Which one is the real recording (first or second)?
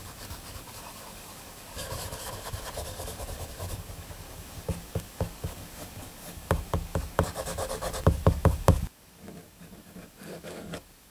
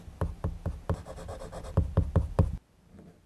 second